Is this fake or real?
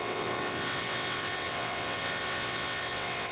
fake